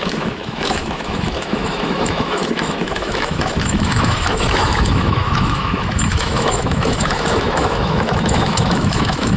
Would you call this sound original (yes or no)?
no